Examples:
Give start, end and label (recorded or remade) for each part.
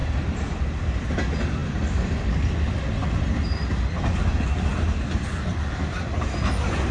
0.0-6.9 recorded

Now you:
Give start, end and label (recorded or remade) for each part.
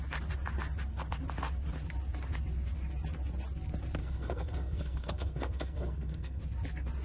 0.0-4.0 recorded; 4.0-6.4 remade; 6.4-7.0 recorded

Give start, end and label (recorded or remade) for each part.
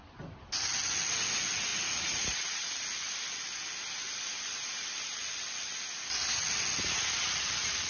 0.0-1.7 recorded; 1.7-2.7 remade; 2.7-7.9 recorded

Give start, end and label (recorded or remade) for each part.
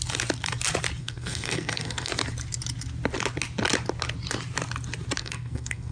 0.0-1.0 recorded; 1.0-2.1 remade; 2.1-5.2 recorded; 5.2-5.9 remade